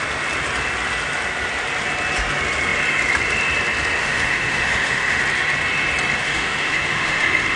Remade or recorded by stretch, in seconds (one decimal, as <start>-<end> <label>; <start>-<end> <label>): 0.0-4.0 recorded; 4.0-5.2 remade; 5.2-6.2 recorded; 6.2-7.6 remade